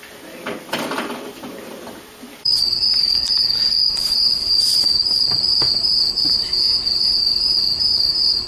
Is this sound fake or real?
fake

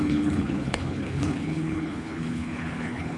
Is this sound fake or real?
fake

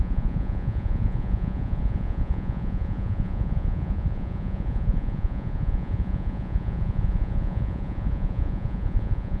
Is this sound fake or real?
fake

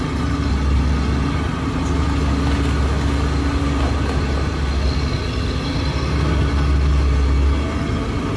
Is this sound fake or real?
real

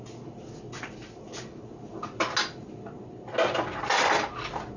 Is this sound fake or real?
real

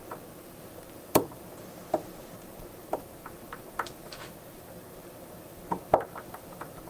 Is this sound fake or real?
fake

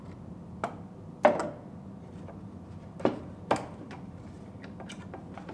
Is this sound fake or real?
real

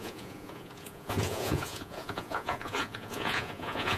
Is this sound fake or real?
fake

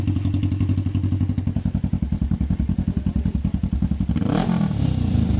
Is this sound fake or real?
real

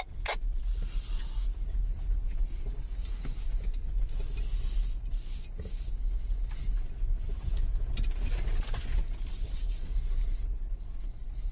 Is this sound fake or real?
real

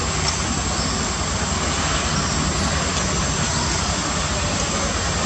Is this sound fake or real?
real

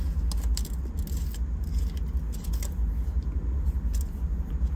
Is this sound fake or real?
real